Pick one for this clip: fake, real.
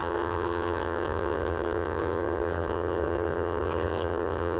fake